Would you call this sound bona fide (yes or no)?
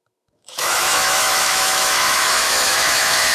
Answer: no